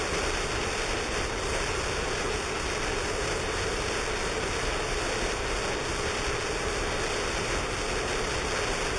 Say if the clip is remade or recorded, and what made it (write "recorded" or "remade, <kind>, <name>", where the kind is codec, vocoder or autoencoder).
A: recorded